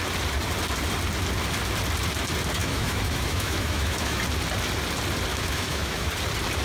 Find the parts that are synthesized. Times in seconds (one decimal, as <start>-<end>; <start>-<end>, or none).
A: 2.6-4.2; 5.3-6.1

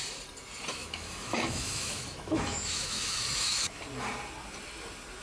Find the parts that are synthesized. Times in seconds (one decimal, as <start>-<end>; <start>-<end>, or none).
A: 0.8-3.8

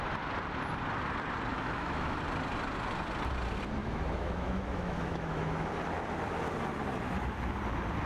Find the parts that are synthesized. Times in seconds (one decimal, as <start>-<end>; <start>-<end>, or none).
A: 1.5-2.2; 3.8-5.7

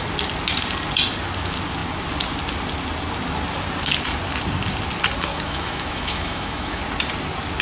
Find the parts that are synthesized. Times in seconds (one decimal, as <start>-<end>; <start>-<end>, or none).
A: 5.3-6.8

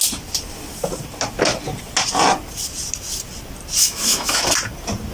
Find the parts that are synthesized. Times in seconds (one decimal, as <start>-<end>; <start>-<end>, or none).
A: 3.8-4.4

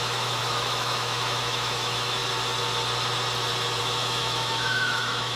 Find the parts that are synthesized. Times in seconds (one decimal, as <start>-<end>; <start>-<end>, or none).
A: 0.0-2.2; 3.8-5.4

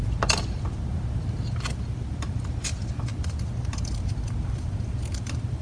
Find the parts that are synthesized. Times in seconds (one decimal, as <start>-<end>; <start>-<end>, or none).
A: none